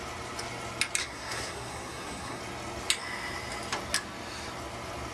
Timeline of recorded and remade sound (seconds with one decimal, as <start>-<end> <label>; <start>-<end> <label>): 0.0-1.0 recorded; 1.0-2.4 remade; 2.4-5.1 recorded